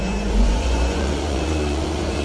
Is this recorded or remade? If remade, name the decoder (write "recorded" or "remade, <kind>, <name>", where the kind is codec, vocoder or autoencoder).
remade, vocoder, Vocos